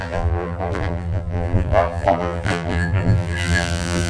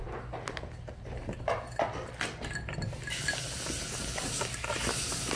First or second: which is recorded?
second